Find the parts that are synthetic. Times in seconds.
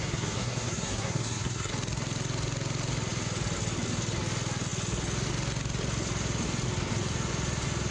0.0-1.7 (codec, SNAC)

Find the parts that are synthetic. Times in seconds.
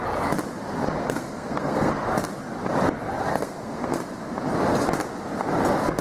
1.0-1.9 (codec, SNAC); 3.3-4.0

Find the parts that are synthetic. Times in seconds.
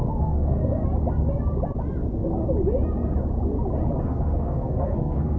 0.0-0.8 (codec, SNAC); 4.0-5.4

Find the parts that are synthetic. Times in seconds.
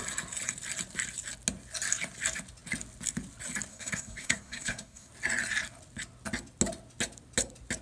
3.7-5.1 (codec, SNAC)